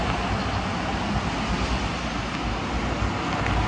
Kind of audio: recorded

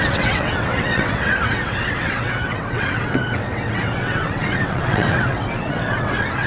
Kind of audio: remade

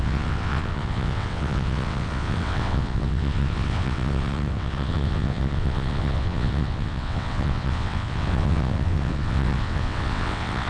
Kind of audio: remade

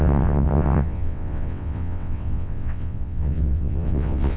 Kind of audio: remade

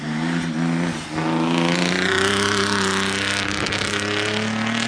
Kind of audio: recorded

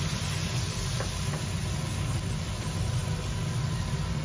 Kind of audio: recorded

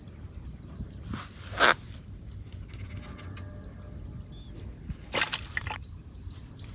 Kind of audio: recorded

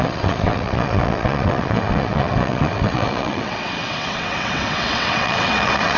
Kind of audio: remade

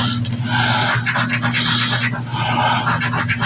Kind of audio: recorded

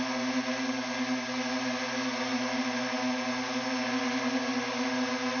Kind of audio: recorded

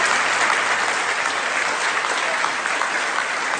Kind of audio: recorded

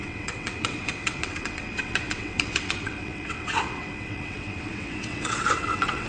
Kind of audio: remade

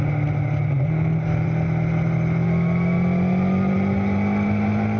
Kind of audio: recorded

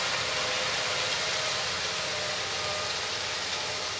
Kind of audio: recorded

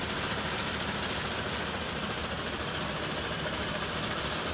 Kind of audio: recorded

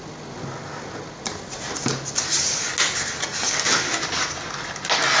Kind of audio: recorded